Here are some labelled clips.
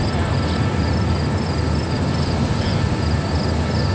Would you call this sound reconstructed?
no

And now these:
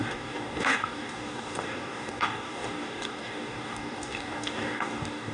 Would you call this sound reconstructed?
yes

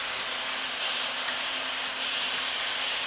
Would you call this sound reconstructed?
no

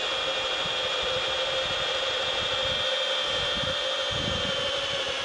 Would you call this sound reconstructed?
yes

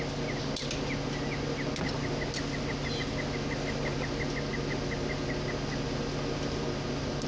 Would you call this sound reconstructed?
no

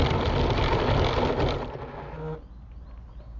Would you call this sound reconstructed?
no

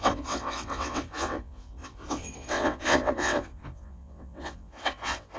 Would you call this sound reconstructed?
yes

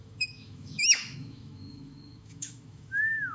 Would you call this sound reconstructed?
yes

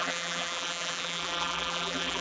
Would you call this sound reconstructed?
yes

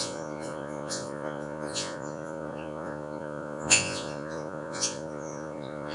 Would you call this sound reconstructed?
yes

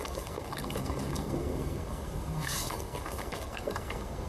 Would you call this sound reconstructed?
yes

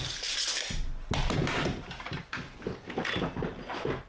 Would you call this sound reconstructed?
no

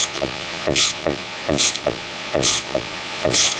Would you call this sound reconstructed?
yes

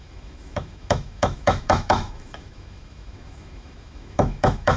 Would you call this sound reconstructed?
yes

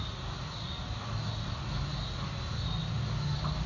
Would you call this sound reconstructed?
no